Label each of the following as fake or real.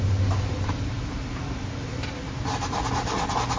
fake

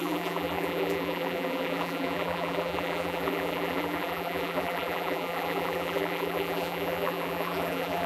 fake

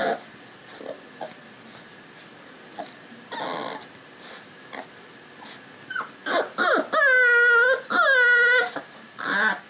real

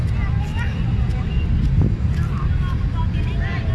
real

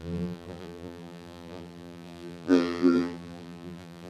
fake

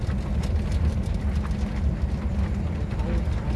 real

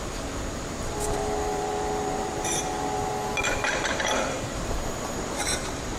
fake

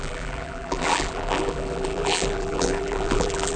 fake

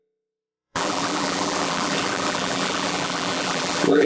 fake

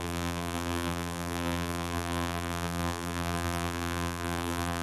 fake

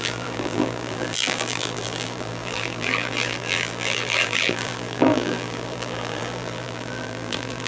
fake